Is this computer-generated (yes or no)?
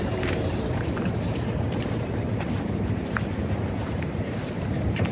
yes